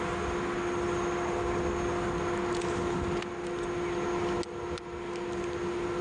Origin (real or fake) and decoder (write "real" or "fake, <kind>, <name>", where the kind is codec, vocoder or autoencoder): real